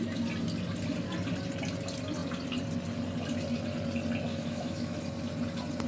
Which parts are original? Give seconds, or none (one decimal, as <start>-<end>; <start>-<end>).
0.0-4.3; 5.0-5.9